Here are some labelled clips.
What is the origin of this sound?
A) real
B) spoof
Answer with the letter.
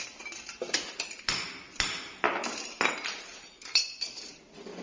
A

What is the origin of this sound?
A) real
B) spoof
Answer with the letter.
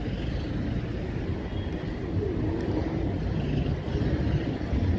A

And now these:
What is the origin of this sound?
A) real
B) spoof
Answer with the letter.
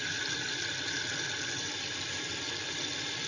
A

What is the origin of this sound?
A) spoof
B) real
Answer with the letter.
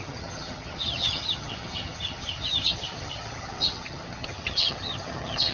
A